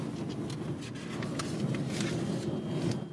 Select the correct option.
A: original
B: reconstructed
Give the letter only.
A